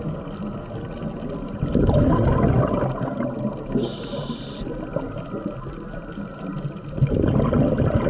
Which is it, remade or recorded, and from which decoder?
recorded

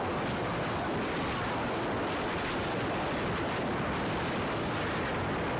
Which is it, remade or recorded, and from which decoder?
recorded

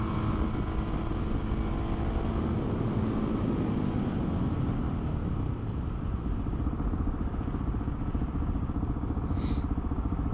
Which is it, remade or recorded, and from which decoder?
recorded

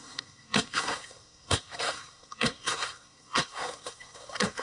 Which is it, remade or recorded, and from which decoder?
remade, codec, SNAC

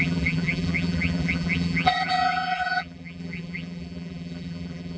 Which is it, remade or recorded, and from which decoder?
remade, vocoder, BigVGAN v2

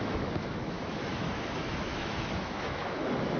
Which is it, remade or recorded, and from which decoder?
remade, autoencoder, DAC-VAE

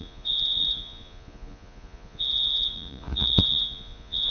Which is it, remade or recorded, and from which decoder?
remade, vocoder, Vocos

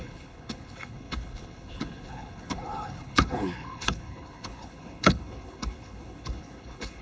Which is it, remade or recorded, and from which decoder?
remade, codec, HILCodec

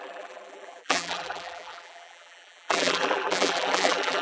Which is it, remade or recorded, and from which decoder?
remade, vocoder, BigVGAN v2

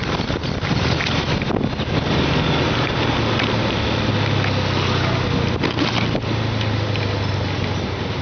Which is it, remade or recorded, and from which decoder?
recorded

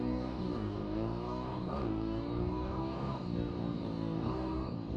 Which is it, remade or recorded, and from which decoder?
remade, codec, DAC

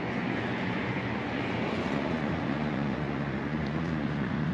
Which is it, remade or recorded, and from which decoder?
remade, vocoder, Vocos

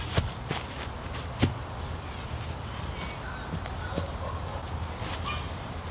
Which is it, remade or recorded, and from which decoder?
recorded